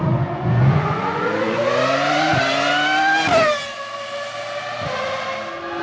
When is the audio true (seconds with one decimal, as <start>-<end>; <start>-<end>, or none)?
1.6-5.8